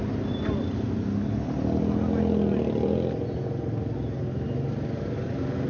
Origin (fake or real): real